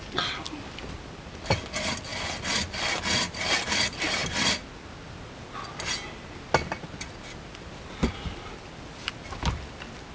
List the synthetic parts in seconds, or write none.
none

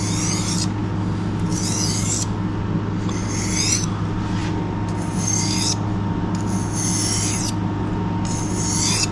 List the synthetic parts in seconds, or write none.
none